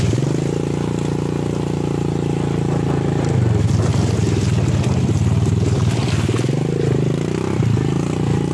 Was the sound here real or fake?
real